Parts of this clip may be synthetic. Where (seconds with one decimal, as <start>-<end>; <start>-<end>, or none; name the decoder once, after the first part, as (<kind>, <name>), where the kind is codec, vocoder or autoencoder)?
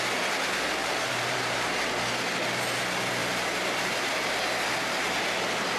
0.8-1.8 (vocoder, BigVGAN v2); 3.2-4.3